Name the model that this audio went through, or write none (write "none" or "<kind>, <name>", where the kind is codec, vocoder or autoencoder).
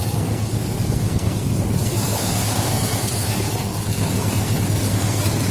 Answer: codec, SNAC